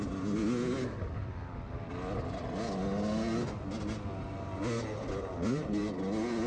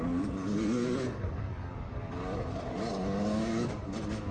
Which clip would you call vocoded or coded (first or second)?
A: second